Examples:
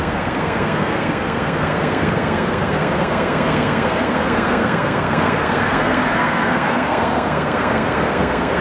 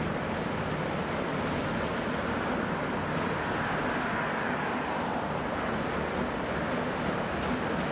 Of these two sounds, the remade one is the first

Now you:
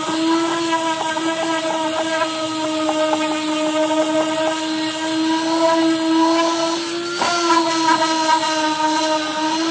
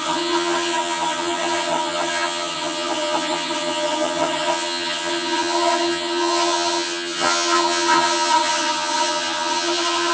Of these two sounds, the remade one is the second